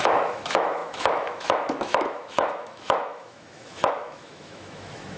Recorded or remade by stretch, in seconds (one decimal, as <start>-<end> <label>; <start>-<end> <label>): 0.0-5.2 remade